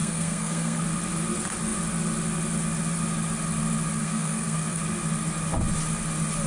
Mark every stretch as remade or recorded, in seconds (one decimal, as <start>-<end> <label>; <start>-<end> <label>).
0.0-0.8 remade; 0.8-4.0 recorded; 4.0-4.8 remade; 4.8-6.5 recorded